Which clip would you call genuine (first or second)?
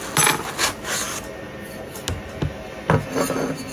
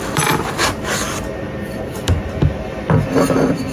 first